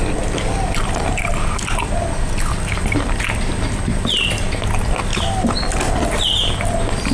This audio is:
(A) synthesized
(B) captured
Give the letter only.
B